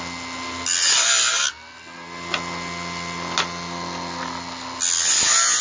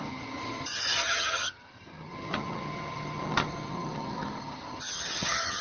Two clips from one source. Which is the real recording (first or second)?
first